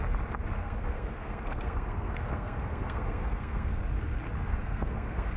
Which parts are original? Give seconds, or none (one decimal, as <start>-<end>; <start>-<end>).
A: 0.0-0.6; 3.8-4.5